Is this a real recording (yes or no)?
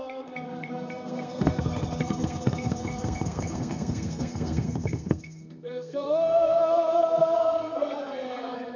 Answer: no